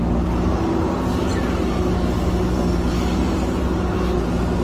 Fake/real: real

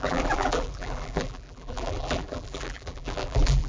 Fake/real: fake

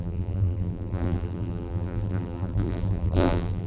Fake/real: fake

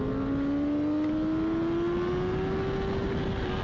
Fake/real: real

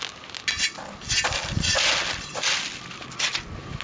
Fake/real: real